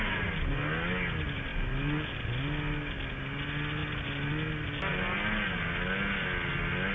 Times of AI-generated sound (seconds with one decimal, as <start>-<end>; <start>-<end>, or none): none